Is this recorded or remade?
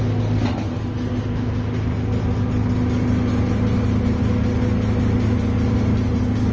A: recorded